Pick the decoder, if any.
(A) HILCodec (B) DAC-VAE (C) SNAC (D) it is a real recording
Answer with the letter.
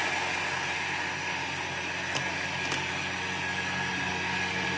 D